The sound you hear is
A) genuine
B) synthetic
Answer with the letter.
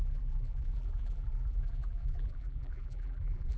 B